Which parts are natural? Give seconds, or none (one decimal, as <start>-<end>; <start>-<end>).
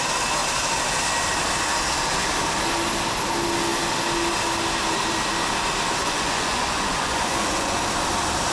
0.0-6.0; 7.8-8.5